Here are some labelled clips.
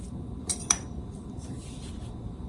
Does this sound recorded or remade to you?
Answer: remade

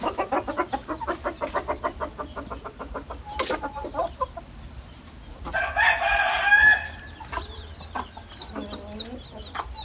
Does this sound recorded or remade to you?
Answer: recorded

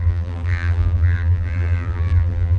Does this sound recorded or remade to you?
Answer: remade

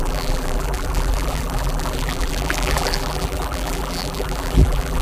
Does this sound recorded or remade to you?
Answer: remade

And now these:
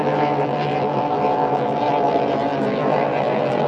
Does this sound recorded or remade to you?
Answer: remade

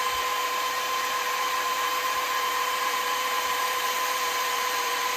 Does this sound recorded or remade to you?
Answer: remade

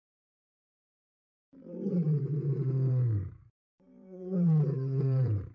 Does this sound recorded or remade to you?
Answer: remade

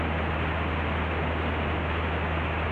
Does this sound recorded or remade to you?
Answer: recorded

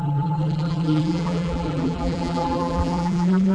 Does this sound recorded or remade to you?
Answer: remade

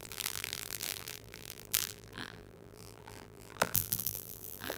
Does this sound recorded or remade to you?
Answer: remade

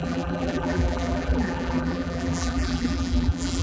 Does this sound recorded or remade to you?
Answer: remade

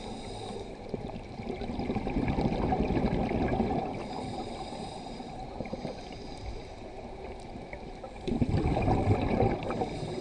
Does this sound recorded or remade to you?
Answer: remade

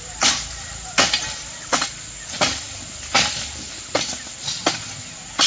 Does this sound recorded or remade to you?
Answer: remade